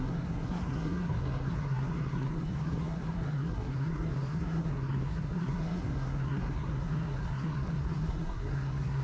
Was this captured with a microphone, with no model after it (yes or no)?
no